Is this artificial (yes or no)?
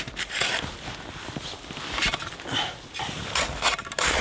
no